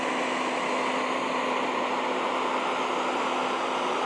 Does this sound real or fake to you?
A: real